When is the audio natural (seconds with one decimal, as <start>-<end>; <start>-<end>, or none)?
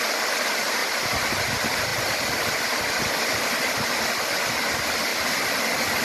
0.0-6.0